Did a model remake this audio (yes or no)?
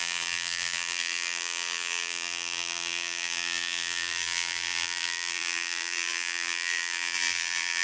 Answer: yes